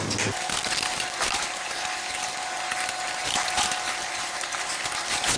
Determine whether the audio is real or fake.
real